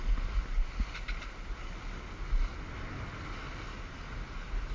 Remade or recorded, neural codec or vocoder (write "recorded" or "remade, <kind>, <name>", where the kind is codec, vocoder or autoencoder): recorded